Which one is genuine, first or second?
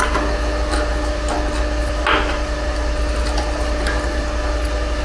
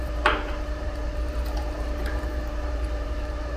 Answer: first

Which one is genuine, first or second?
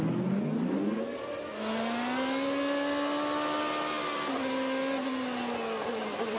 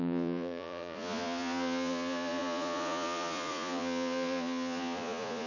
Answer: first